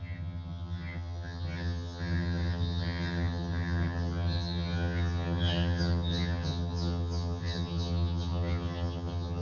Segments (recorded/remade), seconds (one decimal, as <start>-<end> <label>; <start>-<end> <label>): 0.0-9.4 remade